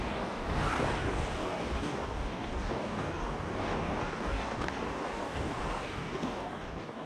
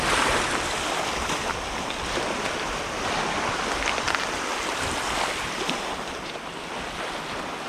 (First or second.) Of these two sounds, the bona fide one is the second